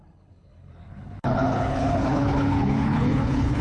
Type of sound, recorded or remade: remade